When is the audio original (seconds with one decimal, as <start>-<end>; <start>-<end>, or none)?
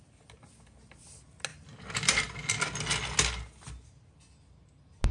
0.0-5.1